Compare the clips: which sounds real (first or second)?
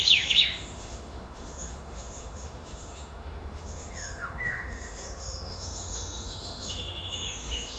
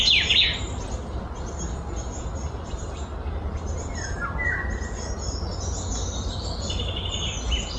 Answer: second